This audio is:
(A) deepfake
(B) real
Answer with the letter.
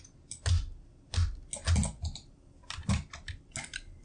B